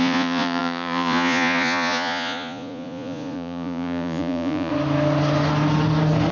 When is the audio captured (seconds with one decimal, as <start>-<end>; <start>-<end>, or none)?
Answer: 4.7-6.3